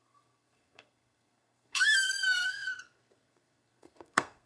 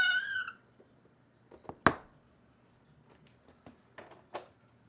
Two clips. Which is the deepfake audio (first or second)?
first